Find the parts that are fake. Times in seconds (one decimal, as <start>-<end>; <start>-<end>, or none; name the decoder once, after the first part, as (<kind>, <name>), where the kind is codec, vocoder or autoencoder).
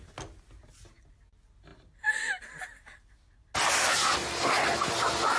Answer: none